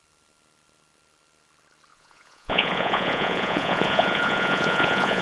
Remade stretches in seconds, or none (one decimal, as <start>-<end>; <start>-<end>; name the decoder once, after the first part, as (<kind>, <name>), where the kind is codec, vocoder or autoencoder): 1.9-5.2 (vocoder, Vocos)